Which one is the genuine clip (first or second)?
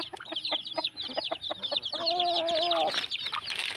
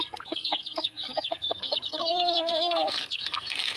first